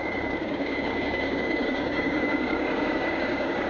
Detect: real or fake fake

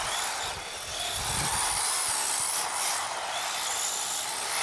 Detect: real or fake real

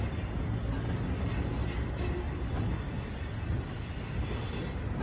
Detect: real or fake real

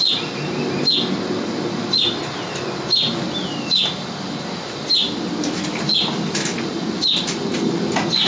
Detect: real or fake real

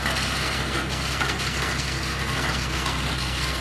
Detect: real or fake fake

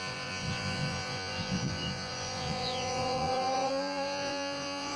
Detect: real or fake fake